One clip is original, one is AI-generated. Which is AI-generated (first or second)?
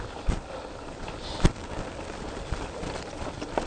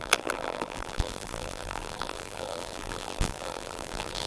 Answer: second